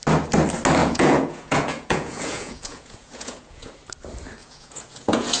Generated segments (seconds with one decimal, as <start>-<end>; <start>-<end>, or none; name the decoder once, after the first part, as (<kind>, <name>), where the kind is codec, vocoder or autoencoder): 0.8-3.7 (vocoder, Vocos); 4.4-5.4